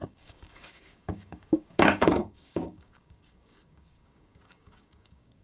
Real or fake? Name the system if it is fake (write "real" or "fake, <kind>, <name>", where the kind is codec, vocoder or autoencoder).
fake, codec, DAC